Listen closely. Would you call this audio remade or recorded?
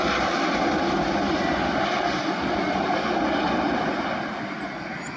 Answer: recorded